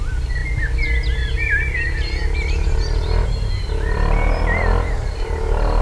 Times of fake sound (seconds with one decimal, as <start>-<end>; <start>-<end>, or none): none